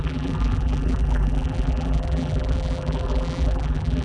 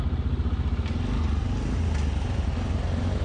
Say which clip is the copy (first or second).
first